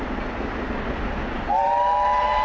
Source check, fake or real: real